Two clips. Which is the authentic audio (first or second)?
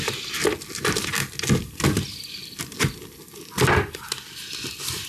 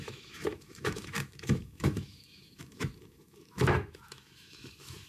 first